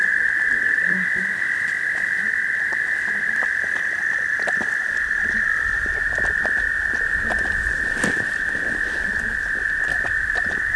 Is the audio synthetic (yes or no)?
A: no